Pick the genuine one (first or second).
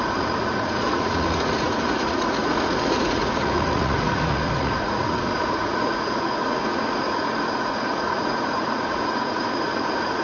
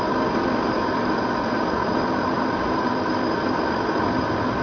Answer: second